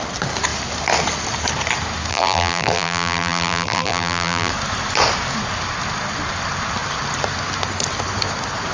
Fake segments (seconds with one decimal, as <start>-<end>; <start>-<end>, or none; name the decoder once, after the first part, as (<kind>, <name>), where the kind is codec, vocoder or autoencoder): 2.1-4.5 (vocoder, BigVGAN v2)